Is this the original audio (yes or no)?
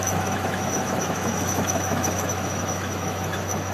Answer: no